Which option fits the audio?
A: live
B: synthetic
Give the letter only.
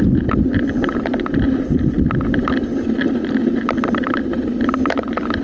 A